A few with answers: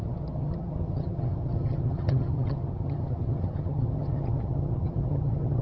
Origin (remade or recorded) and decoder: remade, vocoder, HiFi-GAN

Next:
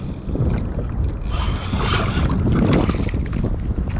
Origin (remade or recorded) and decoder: recorded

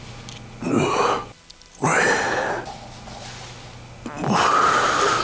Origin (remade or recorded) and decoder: recorded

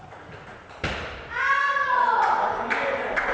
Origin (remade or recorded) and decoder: recorded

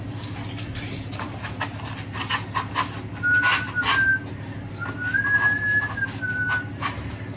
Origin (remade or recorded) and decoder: recorded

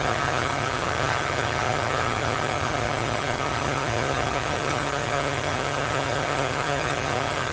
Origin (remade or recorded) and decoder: remade, vocoder, HiFi-GAN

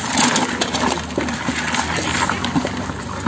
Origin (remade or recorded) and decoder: recorded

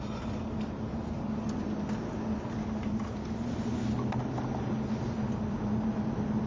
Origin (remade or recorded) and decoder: recorded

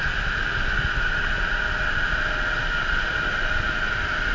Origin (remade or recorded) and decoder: recorded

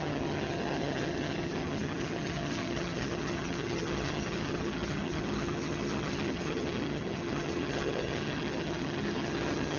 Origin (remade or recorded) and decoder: remade, vocoder, HiFi-GAN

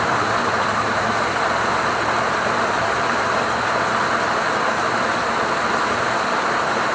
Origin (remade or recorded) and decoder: recorded